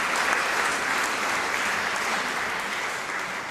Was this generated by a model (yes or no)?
no